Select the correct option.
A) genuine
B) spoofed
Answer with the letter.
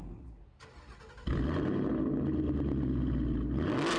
A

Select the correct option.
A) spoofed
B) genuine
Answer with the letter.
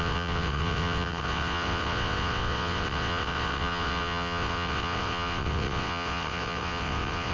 A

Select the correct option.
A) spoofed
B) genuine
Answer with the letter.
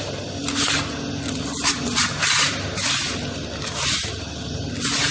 B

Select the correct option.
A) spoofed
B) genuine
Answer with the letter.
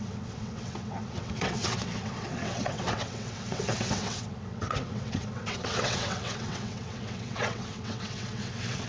A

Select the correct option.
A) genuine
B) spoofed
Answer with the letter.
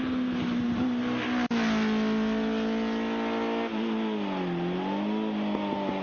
A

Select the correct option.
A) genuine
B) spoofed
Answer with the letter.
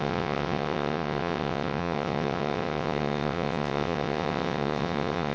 B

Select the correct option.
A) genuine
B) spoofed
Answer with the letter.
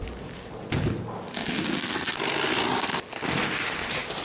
A